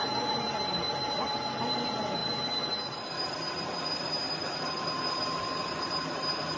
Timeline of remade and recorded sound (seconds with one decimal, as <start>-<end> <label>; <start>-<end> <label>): 0.0-6.6 recorded